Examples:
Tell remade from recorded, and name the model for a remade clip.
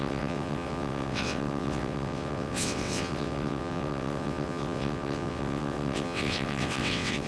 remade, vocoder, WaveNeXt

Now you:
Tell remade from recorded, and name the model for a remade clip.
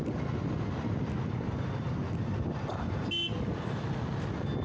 recorded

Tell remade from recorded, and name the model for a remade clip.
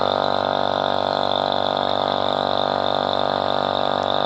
recorded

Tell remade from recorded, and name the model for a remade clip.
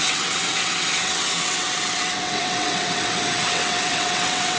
remade, vocoder, WaveNeXt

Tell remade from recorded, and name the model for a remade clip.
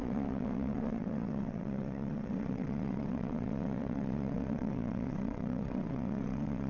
remade, vocoder, WaveNeXt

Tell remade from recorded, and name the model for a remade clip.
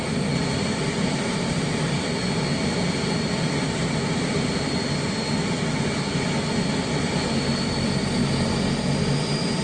recorded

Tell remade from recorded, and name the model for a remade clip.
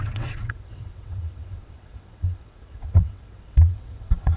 remade, vocoder, WaveNeXt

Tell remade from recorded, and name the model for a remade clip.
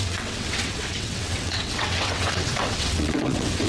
remade, vocoder, WaveNeXt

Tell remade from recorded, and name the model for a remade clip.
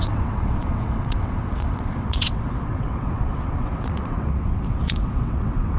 remade, vocoder, WaveNeXt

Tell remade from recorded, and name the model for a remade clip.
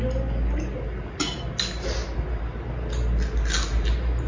recorded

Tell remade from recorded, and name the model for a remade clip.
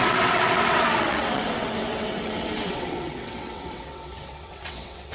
remade, vocoder, WaveNeXt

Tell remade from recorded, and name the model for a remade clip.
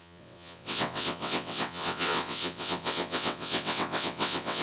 remade, vocoder, WaveNeXt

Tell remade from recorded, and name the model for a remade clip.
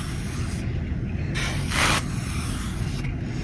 recorded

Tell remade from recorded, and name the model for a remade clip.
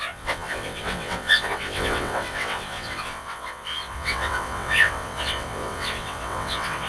remade, vocoder, WaveNeXt